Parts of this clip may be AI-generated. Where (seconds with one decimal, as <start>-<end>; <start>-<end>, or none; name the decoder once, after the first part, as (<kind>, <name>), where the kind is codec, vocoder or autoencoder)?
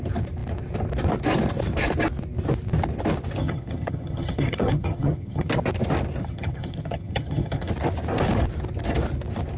3.4-5.5 (vocoder, HiFi-GAN); 6.2-7.7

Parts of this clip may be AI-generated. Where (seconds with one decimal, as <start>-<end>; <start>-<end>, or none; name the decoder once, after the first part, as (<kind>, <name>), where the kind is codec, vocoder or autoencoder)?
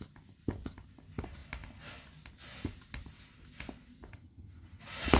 4.1-4.8 (vocoder, HiFi-GAN)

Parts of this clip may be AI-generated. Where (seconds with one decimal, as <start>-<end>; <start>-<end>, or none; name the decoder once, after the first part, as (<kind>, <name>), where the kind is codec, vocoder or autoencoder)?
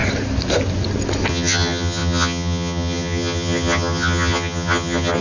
1.3-5.2 (vocoder, HiFi-GAN)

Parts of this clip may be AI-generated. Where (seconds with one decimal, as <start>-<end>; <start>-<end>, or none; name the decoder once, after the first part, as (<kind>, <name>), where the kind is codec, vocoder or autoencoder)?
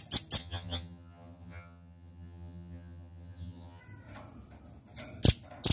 0.4-3.8 (vocoder, HiFi-GAN)